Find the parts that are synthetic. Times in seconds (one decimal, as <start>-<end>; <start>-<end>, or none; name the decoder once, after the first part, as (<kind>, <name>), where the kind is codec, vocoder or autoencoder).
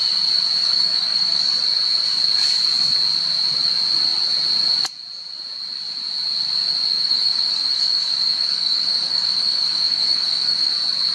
0.6-1.4 (codec, DAC); 6.9-10.7